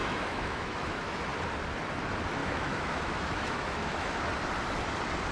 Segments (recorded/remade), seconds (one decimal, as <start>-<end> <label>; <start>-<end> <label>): 0.0-1.2 remade; 1.2-2.4 recorded; 2.4-4.2 remade; 4.2-5.3 recorded